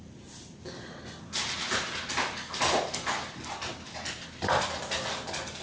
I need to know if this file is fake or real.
real